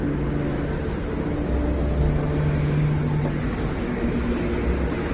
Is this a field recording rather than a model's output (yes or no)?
yes